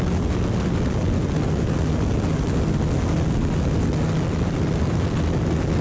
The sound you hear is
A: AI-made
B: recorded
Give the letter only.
B